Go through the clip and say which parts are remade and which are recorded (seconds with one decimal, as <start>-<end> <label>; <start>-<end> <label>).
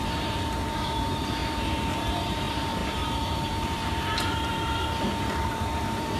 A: 0.0-6.2 remade